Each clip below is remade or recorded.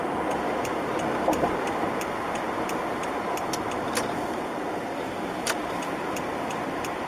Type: remade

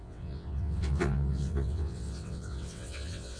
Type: remade